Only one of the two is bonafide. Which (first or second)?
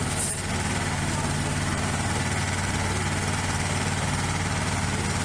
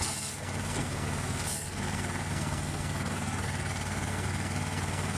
first